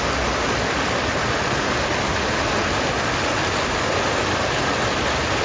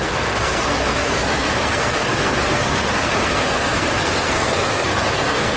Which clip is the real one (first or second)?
first